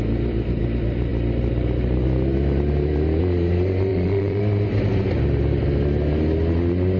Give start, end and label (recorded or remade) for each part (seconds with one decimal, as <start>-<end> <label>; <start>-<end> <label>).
0.0-3.9 recorded; 3.9-4.4 remade; 4.4-7.0 recorded